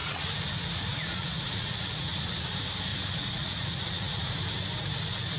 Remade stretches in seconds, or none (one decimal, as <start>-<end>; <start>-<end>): 0.0-2.2; 2.9-4.3